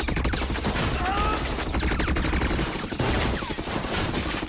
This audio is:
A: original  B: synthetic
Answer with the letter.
A